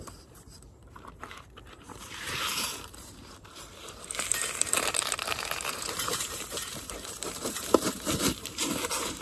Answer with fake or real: fake